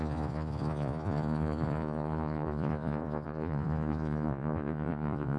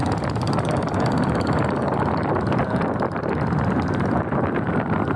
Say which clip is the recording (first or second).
second